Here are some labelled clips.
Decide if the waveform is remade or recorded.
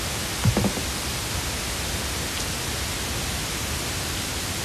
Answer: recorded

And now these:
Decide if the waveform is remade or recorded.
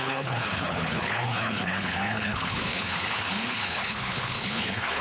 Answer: remade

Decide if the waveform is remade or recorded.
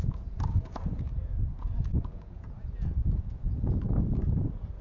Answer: remade